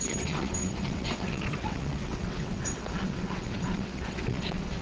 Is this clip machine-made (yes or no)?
yes